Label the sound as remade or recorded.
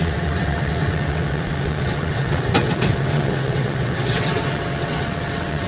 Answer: remade